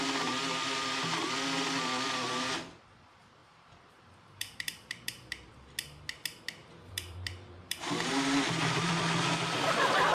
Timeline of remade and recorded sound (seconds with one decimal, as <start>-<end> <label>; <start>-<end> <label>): 0.0-3.4 recorded; 3.4-5.5 remade; 5.5-6.6 recorded; 6.6-8.9 remade; 8.9-10.1 recorded